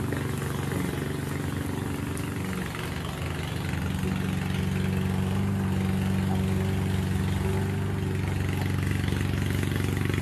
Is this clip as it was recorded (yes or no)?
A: yes